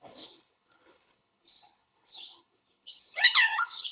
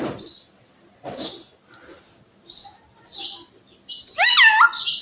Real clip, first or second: second